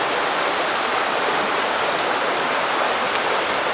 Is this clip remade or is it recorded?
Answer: recorded